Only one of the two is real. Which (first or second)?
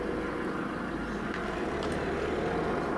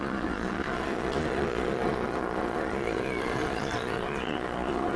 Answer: first